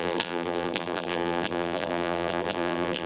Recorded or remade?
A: remade